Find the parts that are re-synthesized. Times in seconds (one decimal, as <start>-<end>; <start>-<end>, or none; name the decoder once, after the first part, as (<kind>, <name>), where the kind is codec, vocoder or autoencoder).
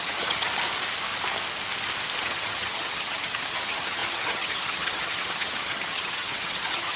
0.0-0.5 (vocoder, HiFi-GAN); 2.2-7.0